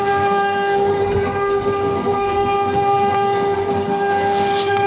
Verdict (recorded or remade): remade